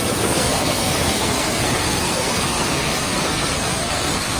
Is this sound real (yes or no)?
no